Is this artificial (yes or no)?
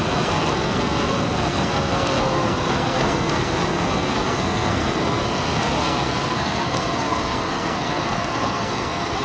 yes